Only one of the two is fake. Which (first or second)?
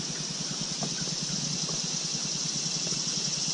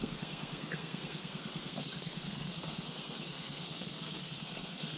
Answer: second